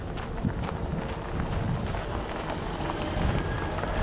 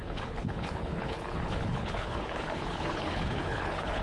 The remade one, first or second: second